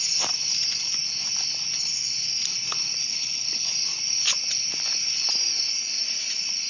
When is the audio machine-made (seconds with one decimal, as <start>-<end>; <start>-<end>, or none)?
3.0-3.7